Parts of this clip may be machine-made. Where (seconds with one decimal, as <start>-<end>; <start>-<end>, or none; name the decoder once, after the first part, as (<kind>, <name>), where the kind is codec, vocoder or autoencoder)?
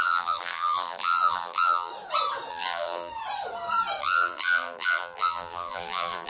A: 0.0-1.9 (vocoder, BigVGAN v2); 2.5-3.1; 4.0-6.3